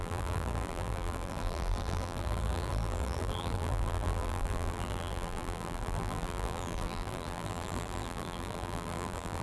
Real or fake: fake